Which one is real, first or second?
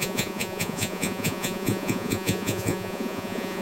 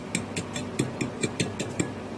second